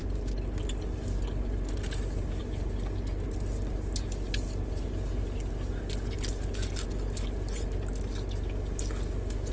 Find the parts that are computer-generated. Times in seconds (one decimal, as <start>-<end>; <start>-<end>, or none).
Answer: none

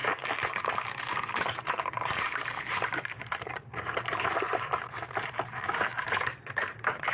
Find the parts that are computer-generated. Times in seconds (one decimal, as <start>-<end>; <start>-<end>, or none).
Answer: 0.0-7.1

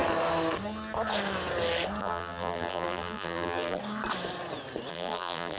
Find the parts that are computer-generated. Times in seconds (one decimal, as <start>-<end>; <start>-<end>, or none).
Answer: 2.0-3.8; 4.9-5.6

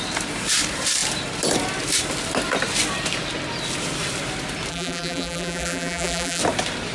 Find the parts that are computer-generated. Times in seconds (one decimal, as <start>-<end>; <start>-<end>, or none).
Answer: 4.7-6.4